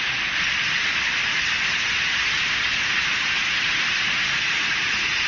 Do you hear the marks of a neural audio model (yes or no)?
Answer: no